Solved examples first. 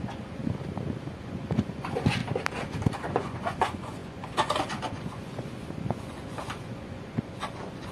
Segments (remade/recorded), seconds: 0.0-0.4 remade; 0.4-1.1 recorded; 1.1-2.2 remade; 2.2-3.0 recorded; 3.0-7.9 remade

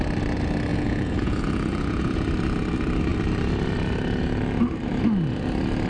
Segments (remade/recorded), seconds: 0.0-0.7 recorded; 0.7-2.2 remade; 2.2-5.9 recorded

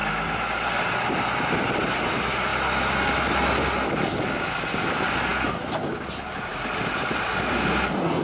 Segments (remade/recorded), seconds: 0.0-8.2 recorded

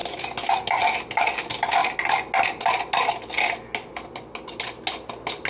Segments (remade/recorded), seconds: 0.0-5.5 recorded

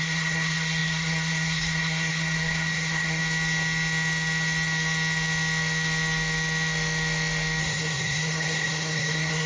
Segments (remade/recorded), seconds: 0.0-3.2 remade; 3.2-7.6 recorded; 7.6-9.5 remade

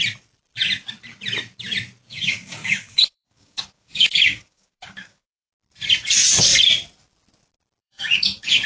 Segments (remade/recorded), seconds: 0.0-2.1 recorded; 2.1-5.5 remade; 5.5-7.8 recorded; 7.8-8.7 remade

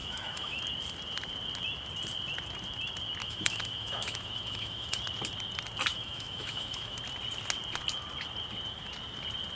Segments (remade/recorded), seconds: 0.0-0.6 remade; 0.6-3.2 recorded; 3.2-5.0 remade; 5.0-5.9 recorded; 5.9-7.0 remade; 7.0-9.6 recorded